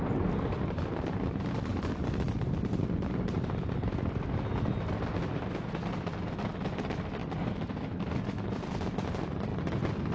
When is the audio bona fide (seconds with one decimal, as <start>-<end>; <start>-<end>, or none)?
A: 1.7-5.1; 9.5-10.1